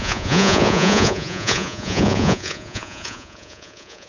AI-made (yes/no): yes